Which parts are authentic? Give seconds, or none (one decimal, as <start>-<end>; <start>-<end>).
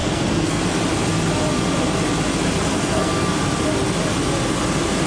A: 0.6-2.7; 3.4-5.1